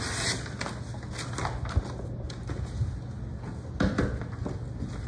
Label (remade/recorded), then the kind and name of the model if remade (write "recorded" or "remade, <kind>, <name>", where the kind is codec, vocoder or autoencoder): recorded